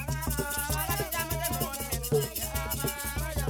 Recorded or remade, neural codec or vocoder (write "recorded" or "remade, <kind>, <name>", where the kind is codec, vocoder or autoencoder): recorded